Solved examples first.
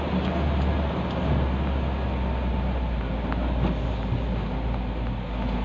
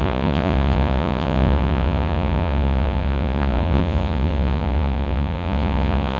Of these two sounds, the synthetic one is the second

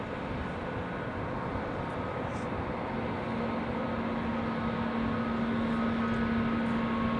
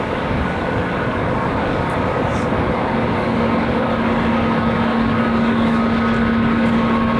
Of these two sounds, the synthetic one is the second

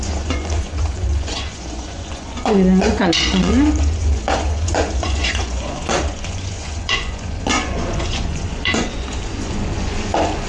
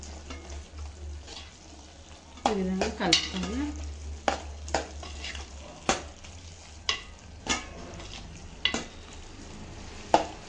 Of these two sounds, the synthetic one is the first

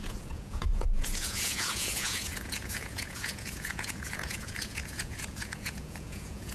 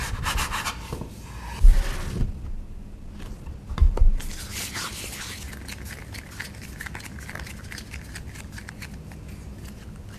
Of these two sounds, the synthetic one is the first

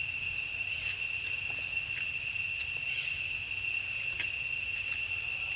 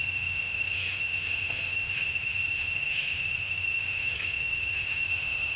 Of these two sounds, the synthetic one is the second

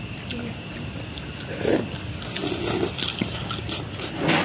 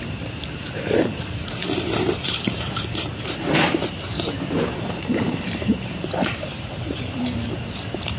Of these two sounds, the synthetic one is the second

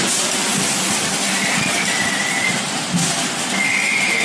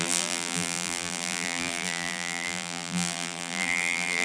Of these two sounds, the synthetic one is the second